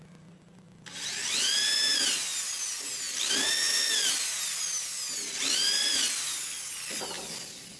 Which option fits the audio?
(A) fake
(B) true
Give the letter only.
B